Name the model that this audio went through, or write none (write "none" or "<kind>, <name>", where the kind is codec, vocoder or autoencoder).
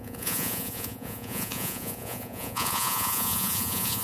vocoder, Vocos